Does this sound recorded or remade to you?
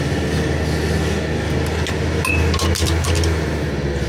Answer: recorded